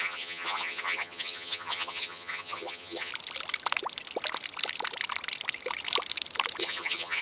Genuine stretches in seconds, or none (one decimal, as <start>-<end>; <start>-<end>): 3.1-6.6